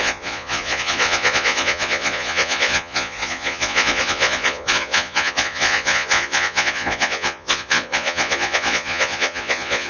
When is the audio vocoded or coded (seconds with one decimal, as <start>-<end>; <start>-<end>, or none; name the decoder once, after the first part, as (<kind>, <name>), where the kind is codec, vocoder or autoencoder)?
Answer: 0.0-9.9 (vocoder, Vocos)